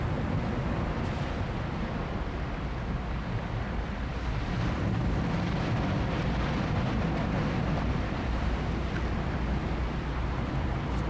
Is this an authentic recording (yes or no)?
yes